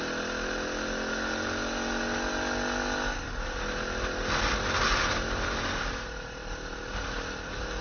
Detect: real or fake real